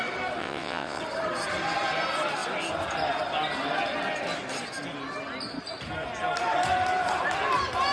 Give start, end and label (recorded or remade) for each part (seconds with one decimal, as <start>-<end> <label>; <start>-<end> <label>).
0.0-0.4 recorded; 0.4-1.0 remade; 1.0-7.9 recorded